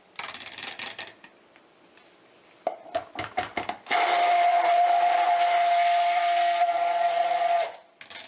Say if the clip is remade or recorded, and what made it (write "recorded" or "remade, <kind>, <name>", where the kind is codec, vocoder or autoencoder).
recorded